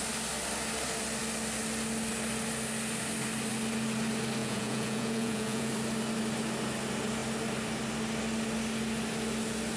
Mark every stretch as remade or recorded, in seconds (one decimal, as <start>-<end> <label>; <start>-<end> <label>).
0.0-4.4 recorded; 4.4-5.7 remade; 5.7-9.8 recorded